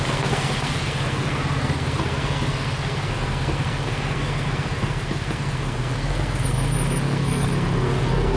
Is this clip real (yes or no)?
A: no